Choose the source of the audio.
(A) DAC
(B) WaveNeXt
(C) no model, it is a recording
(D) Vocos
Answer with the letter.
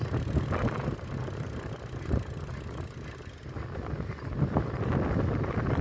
C